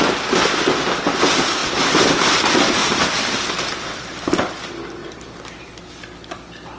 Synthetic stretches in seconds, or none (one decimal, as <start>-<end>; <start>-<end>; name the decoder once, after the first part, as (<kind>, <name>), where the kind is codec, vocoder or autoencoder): 1.6-2.3 (vocoder, BigVGAN v2); 2.8-3.5